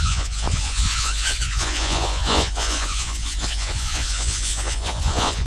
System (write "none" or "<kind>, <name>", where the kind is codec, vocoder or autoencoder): vocoder, Vocos